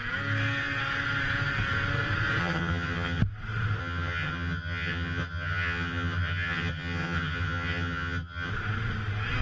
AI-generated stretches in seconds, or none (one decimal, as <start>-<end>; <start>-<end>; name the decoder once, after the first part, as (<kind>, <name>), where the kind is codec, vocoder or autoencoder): 2.4-3.2 (vocoder, HiFi-GAN); 3.8-8.5